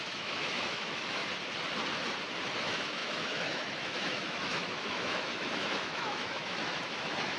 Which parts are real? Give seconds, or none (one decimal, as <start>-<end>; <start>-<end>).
1.2-2.6